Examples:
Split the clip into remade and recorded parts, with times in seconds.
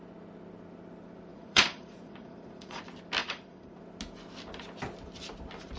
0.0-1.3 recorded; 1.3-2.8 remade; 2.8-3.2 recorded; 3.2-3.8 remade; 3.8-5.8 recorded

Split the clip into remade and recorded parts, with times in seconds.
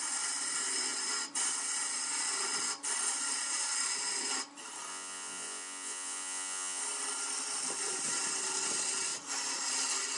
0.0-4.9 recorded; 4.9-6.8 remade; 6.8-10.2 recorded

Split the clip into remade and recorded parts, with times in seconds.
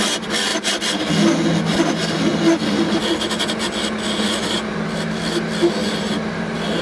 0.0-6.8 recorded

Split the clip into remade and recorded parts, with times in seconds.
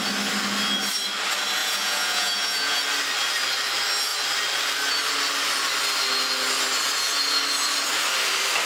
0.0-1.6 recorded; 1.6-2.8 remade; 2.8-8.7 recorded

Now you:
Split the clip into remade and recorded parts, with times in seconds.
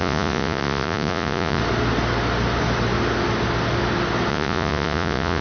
0.0-1.6 remade; 1.6-4.3 recorded; 4.3-5.4 remade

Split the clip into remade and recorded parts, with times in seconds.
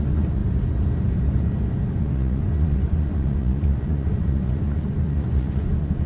0.0-0.4 remade; 0.4-2.0 recorded; 2.0-6.1 remade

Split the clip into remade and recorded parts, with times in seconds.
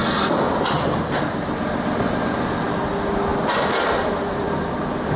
0.0-5.2 recorded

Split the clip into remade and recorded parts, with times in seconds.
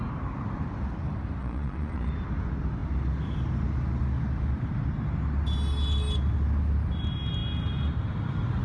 0.0-1.4 recorded; 1.4-2.1 remade; 2.1-8.6 recorded